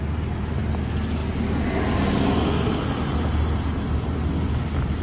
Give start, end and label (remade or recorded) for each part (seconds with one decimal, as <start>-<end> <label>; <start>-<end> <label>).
0.0-5.0 recorded

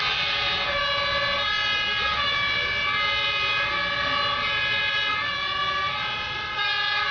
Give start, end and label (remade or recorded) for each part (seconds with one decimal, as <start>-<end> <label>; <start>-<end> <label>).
0.0-7.1 recorded

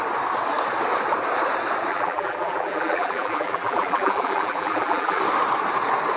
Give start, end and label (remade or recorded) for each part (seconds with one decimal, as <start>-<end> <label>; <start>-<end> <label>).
0.0-1.9 recorded; 1.9-5.2 remade; 5.2-6.2 recorded

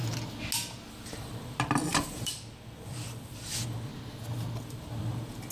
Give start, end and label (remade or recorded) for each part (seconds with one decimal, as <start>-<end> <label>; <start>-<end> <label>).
0.0-0.9 recorded; 0.9-3.9 remade; 3.9-4.6 recorded; 4.6-5.5 remade

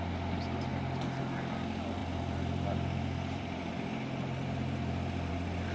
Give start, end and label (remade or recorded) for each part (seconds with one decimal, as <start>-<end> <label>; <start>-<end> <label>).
0.0-2.0 recorded; 2.0-5.3 remade; 5.3-5.7 recorded

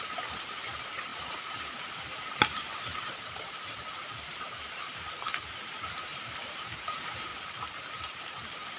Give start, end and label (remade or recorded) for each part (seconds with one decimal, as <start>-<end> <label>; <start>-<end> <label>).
0.0-7.3 remade; 7.3-7.9 recorded; 7.9-8.8 remade

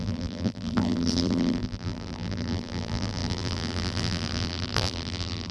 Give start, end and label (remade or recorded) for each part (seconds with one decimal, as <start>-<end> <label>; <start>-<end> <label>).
0.0-5.5 remade

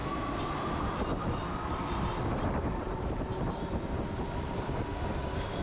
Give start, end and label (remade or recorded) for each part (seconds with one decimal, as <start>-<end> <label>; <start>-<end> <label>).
0.0-5.6 recorded